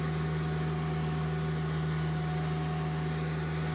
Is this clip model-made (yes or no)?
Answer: no